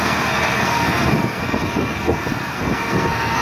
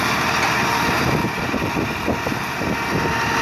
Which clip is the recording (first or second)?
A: second